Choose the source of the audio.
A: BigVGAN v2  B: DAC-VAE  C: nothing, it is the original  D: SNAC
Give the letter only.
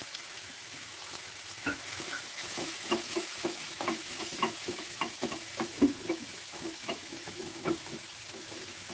B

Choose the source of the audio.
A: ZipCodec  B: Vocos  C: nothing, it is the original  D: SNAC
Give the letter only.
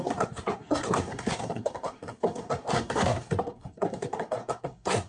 D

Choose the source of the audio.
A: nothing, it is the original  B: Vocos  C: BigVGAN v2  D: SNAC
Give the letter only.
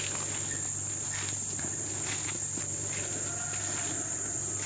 A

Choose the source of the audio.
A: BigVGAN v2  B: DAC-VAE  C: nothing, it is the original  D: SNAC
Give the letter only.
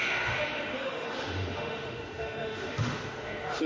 B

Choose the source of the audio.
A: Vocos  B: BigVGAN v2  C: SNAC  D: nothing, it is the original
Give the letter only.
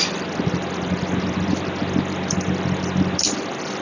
B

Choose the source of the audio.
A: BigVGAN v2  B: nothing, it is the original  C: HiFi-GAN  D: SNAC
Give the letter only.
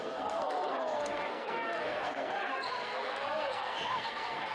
D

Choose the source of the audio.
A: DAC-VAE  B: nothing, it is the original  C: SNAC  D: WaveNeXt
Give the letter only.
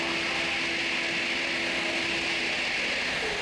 B